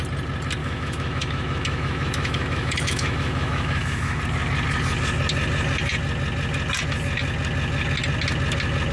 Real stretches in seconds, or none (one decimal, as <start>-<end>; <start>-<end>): 0.0-0.6; 4.2-8.9